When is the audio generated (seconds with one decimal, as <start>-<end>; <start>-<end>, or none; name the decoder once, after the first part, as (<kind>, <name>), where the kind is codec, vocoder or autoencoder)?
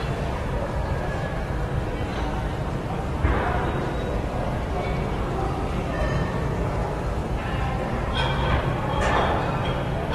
0.0-7.2 (vocoder, BigVGAN v2); 8.2-10.1